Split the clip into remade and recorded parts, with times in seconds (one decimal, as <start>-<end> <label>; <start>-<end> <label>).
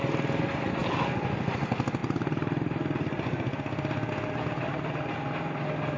0.0-6.0 recorded